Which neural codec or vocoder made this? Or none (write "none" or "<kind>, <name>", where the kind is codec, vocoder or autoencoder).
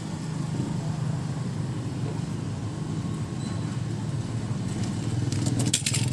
none